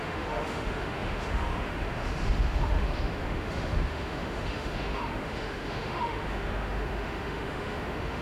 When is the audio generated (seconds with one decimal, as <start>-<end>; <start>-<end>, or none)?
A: 0.0-8.2